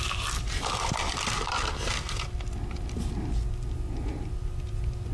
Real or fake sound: real